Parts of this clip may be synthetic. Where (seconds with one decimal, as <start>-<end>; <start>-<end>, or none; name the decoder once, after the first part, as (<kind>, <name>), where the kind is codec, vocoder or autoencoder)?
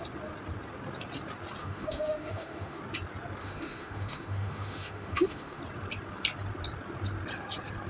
1.6-2.8 (autoencoder, DAC-VAE); 3.4-5.6